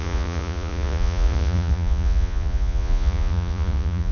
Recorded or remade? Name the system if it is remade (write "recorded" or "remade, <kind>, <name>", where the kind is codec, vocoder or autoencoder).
remade, vocoder, Vocos